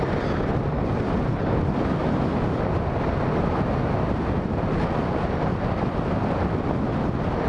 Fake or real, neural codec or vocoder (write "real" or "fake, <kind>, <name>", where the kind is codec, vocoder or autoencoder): real